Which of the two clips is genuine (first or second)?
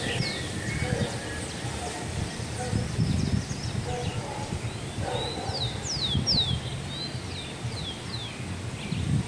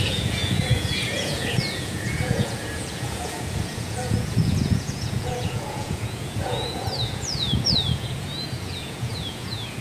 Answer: first